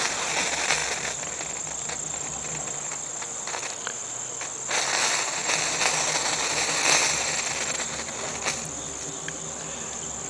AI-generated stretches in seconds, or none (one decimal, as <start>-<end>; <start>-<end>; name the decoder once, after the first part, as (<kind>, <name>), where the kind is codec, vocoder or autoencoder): none